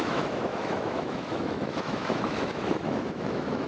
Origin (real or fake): fake